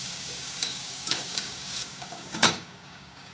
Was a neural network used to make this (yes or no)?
yes